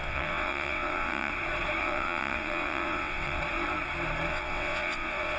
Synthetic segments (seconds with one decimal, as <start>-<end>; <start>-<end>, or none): 0.0-1.3; 1.8-3.4; 4.3-5.4

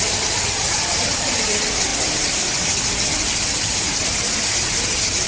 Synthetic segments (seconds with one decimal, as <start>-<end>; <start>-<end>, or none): none

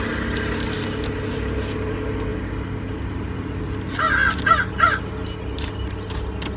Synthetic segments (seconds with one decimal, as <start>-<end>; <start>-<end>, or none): none

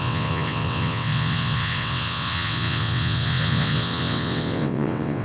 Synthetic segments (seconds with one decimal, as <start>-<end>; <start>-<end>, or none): 0.0-5.2

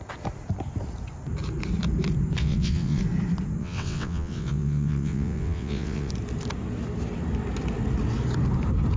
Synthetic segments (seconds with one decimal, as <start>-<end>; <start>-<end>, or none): 2.4-3.0; 3.6-6.1